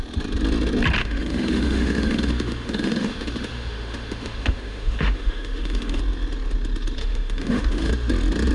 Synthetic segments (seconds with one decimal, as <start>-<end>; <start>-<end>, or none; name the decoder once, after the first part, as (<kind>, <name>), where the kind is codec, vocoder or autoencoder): 1.0-6.0 (autoencoder, DAC-VAE); 7.0-7.9